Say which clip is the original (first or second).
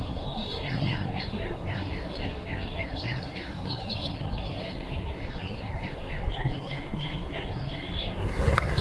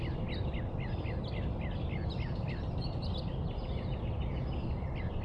second